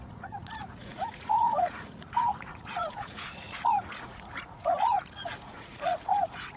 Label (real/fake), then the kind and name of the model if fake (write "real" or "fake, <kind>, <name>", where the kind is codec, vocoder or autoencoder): fake, vocoder, Vocos